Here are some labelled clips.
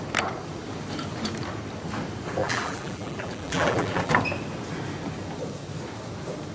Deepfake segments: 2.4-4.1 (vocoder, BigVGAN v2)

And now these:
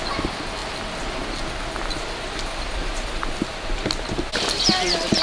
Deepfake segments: none

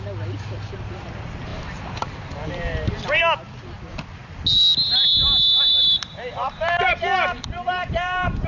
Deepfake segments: 1.5-3.2 (vocoder, BigVGAN v2); 5.7-8.5

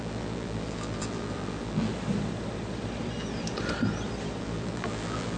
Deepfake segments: 0.0-1.9 (vocoder, BigVGAN v2); 4.4-5.4

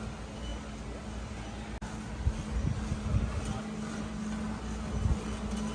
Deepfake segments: none

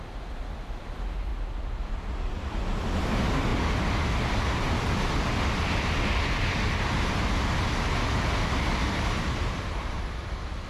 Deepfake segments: 8.8-10.0 (vocoder, BigVGAN v2)